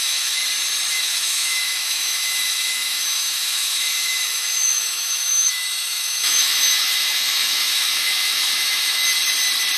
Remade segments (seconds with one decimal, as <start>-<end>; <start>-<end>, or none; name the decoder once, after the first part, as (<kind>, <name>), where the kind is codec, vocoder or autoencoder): 0.0-0.4 (autoencoder, DAC-VAE); 0.9-9.0